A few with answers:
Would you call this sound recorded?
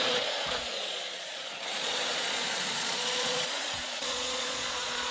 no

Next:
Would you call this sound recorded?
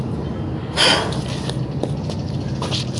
yes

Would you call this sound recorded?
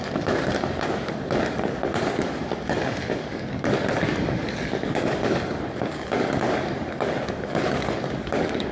no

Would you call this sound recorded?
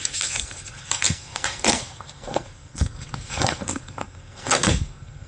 no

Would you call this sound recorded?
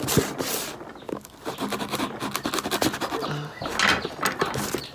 yes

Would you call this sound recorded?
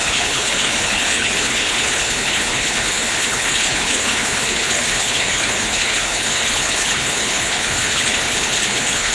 no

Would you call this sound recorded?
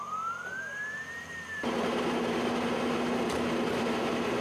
yes